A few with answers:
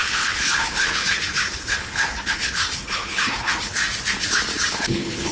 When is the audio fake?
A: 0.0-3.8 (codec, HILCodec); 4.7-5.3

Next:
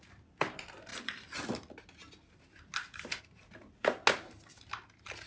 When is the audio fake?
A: none

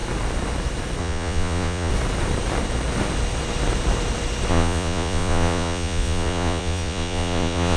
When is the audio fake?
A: 1.0-1.9 (vocoder, Vocos); 4.5-7.8

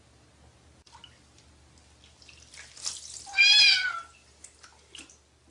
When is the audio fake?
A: none

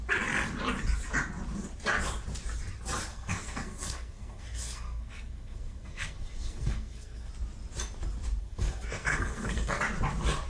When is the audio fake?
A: 3.1-7.3 (codec, SNAC); 8.4-9.8

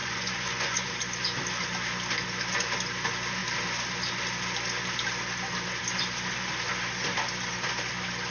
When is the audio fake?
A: 0.0-0.9 (vocoder, Vocos)

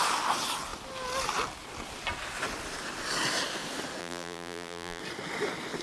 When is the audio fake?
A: 4.0-5.0 (vocoder, BigVGAN v2)